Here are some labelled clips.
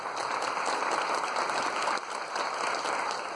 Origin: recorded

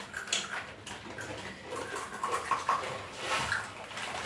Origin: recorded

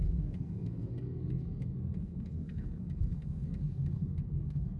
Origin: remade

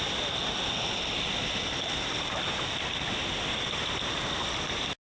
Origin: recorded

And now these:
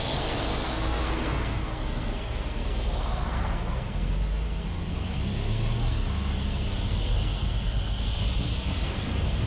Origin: remade